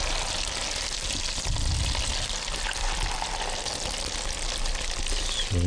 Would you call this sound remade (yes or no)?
no